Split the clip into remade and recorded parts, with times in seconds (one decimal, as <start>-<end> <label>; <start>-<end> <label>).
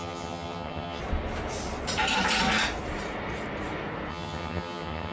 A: 0.0-1.0 remade; 1.0-4.1 recorded; 4.1-5.1 remade